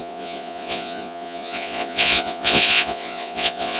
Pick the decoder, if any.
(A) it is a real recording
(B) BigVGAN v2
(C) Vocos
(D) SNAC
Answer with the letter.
C